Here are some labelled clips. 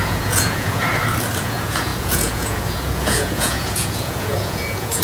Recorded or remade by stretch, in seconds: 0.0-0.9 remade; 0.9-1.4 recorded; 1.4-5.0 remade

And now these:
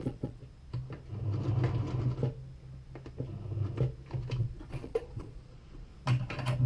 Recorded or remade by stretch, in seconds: 0.0-0.4 remade; 0.4-4.4 recorded; 4.4-5.9 remade; 5.9-6.7 recorded

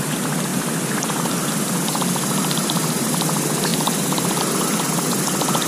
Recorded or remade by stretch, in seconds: 0.0-5.7 recorded

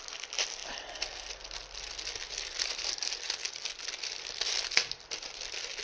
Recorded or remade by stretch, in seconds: 0.0-5.8 recorded

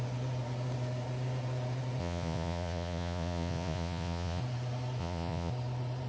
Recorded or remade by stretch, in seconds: 0.0-2.0 recorded; 2.0-4.4 remade; 4.4-5.0 recorded; 5.0-5.5 remade; 5.5-6.1 recorded

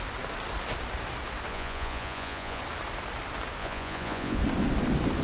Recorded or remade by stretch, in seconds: 0.0-1.5 recorded; 1.5-2.6 remade; 2.6-3.6 recorded; 3.6-4.4 remade; 4.4-5.2 recorded

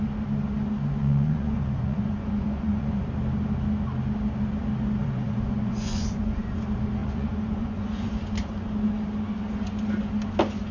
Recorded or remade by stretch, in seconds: 0.0-1.0 recorded; 1.0-3.0 remade; 3.0-5.0 recorded; 5.0-6.6 remade; 6.6-7.0 recorded; 7.0-8.1 remade; 8.1-10.7 recorded